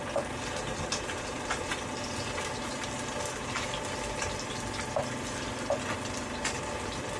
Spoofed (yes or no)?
yes